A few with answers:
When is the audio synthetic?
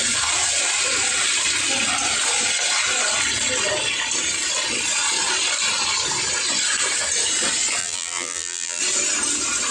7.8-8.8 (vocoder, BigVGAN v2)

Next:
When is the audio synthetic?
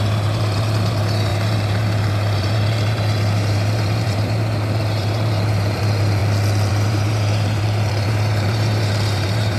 0.0-6.2 (vocoder, BigVGAN v2); 6.7-9.6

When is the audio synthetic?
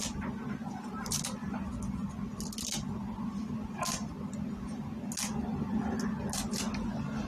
0.6-1.2 (vocoder, BigVGAN v2)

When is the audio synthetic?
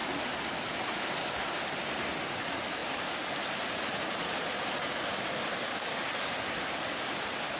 none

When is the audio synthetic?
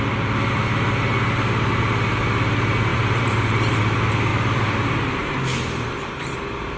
2.9-3.8 (vocoder, BigVGAN v2); 4.3-6.8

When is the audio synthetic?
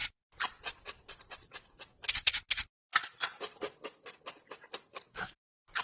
none